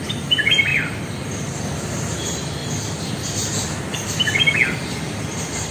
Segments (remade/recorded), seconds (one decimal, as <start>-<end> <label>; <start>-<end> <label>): 0.0-0.7 recorded; 0.7-1.6 remade; 1.6-2.6 recorded; 2.6-5.7 remade